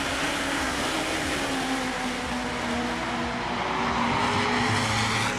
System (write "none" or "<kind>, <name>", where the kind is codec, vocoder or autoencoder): none